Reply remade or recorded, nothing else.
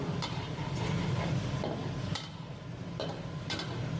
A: recorded